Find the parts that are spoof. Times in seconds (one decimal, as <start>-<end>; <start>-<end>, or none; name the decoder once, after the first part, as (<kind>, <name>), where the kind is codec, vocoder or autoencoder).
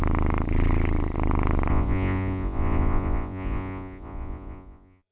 1.7-5.1 (vocoder, Vocos)